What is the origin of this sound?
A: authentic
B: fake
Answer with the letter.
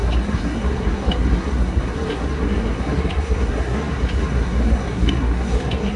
B